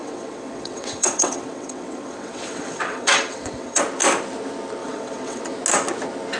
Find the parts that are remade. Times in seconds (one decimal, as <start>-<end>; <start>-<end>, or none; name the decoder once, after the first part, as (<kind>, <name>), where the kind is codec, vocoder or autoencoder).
0.0-3.8 (vocoder, WaveNeXt); 4.8-5.4